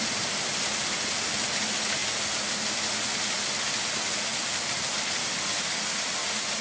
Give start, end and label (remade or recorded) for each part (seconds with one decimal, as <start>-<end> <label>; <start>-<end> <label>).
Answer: 0.0-6.6 recorded